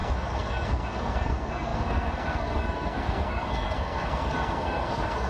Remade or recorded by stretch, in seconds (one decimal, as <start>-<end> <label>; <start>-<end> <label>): 0.0-5.3 remade